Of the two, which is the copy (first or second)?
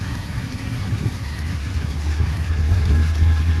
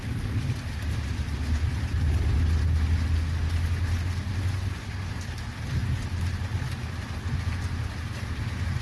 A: first